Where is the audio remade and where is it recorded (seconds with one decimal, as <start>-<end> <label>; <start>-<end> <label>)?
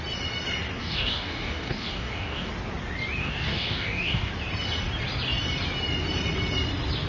0.0-0.8 recorded; 0.8-2.5 remade; 2.5-3.2 recorded; 3.2-4.3 remade; 4.3-7.1 recorded